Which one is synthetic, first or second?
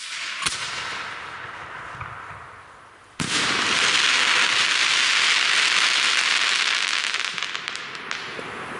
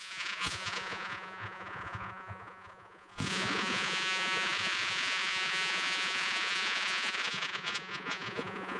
second